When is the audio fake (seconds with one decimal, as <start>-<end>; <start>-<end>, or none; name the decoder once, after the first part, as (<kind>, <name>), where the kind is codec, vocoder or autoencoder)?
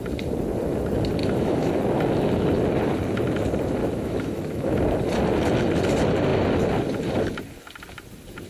1.2-1.8 (autoencoder, DAC-VAE); 3.8-4.8